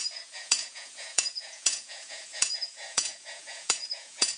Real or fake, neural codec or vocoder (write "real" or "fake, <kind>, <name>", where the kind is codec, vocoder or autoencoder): fake, vocoder, Vocos